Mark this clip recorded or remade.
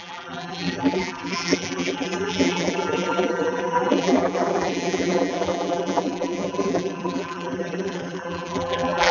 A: remade